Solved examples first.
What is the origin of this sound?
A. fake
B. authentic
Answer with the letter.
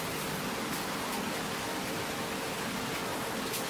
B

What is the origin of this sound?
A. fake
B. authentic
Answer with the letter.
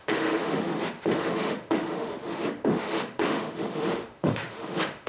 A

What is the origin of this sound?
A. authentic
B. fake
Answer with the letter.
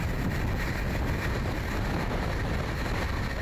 A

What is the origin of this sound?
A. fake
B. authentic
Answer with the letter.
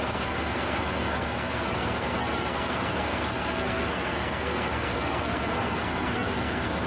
A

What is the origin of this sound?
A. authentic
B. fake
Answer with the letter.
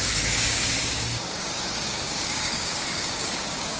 B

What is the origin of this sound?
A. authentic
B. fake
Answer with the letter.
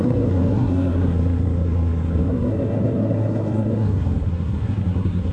B